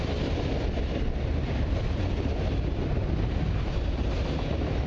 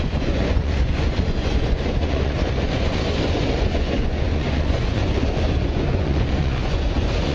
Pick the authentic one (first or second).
first